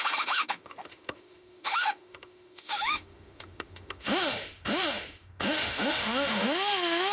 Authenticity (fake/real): fake